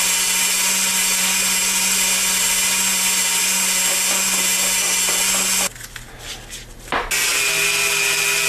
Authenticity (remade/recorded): recorded